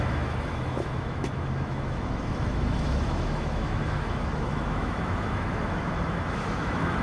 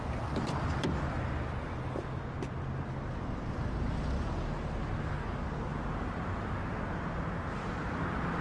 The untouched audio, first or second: second